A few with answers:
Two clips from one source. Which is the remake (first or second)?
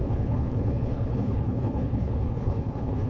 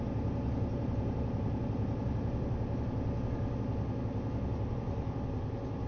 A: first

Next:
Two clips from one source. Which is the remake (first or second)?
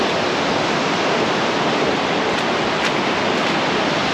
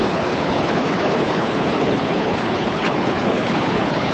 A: second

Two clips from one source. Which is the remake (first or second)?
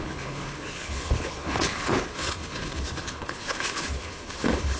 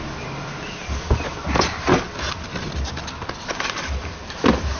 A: first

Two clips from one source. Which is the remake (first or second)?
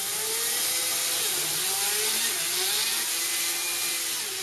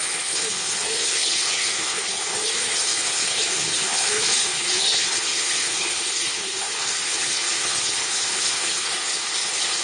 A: second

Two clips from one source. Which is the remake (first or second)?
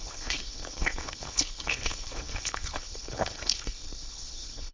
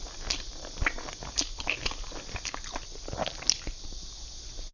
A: first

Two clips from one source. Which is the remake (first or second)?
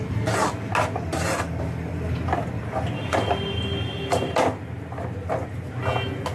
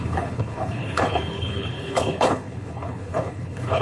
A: second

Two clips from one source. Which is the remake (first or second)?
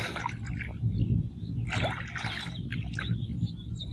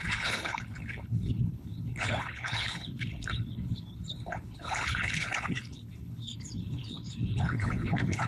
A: second